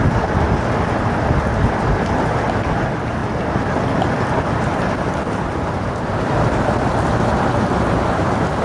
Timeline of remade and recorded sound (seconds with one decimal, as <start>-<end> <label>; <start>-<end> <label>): 0.0-1.5 recorded; 1.5-2.1 remade; 2.1-3.2 recorded; 3.2-7.8 remade; 7.8-8.6 recorded